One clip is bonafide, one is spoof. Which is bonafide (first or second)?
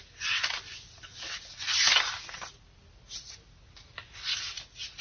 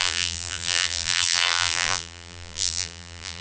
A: first